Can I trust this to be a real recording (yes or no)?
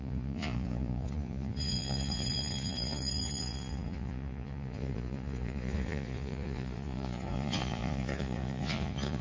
no